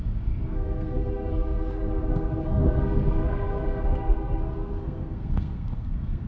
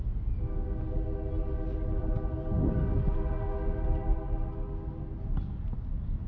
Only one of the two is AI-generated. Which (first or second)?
first